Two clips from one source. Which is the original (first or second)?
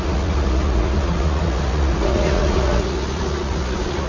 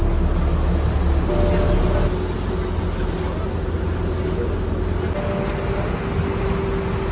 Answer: second